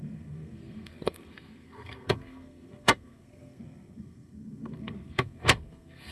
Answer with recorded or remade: remade